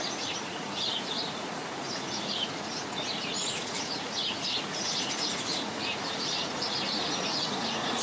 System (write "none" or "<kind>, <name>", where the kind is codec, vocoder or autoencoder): vocoder, Vocos